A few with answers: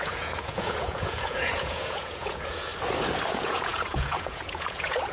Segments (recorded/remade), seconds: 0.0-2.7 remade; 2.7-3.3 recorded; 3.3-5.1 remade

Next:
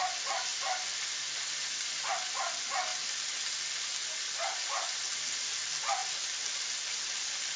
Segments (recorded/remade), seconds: 0.0-7.6 recorded

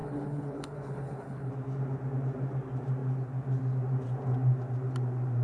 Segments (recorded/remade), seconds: 0.0-1.5 remade; 1.5-5.4 recorded

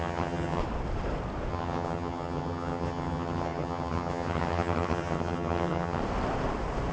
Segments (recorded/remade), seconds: 0.0-0.6 remade; 0.6-1.5 recorded; 1.5-6.0 remade; 6.0-6.9 recorded